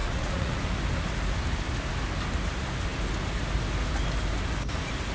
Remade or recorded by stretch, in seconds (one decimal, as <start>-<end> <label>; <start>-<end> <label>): 0.0-0.6 remade; 0.6-5.1 recorded